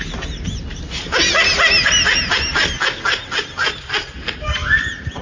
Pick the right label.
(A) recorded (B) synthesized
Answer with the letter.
A